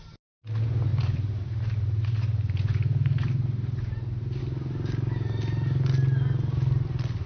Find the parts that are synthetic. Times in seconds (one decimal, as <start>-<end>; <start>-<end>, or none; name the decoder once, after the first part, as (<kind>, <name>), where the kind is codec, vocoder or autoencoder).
0.9-4.4 (vocoder, BigVGAN v2)